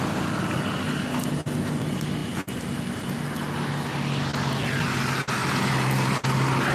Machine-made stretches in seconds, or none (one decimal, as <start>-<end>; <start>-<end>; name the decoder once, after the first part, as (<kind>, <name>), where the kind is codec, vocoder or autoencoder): none